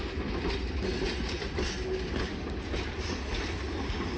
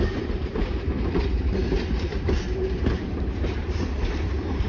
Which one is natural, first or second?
first